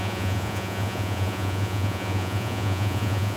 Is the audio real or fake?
fake